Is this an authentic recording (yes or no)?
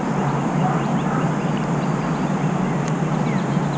yes